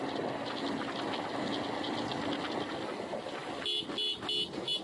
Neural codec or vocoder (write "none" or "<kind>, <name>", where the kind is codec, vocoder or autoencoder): none